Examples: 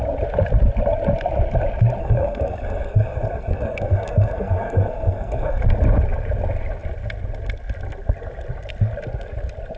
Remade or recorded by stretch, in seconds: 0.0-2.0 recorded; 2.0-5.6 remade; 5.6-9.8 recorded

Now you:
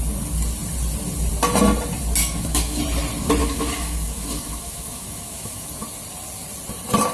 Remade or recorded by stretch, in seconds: 0.0-2.2 recorded; 2.2-2.8 remade; 2.8-3.4 recorded; 3.4-5.7 remade; 5.7-7.1 recorded

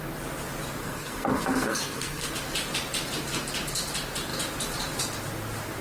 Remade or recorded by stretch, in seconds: 0.0-0.8 recorded; 0.8-2.3 remade; 2.3-5.8 recorded

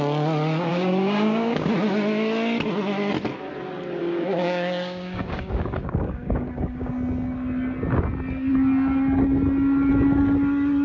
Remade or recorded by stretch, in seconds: 0.0-0.7 recorded; 0.7-1.7 remade; 1.7-4.0 recorded; 4.0-6.9 remade; 6.9-10.8 recorded

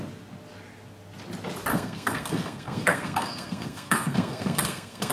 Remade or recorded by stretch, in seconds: 0.0-1.7 recorded; 1.7-5.1 remade